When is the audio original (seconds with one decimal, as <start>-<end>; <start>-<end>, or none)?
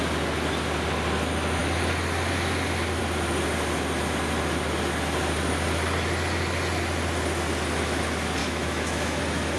0.0-8.4; 9.2-9.6